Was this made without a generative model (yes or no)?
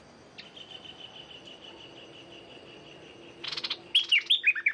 yes